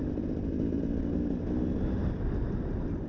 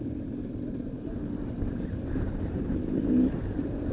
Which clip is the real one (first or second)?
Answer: first